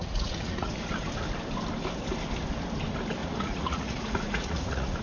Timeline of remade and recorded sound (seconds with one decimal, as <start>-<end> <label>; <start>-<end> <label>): 0.0-0.7 remade; 0.7-3.2 recorded; 3.2-5.0 remade